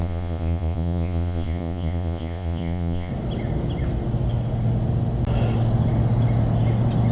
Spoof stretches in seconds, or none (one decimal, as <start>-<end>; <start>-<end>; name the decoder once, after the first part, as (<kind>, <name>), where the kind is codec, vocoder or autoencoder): 0.0-3.1 (vocoder, Vocos)